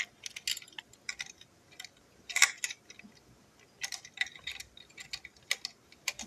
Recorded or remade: recorded